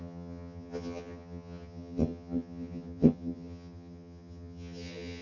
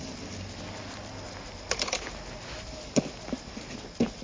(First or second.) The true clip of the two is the second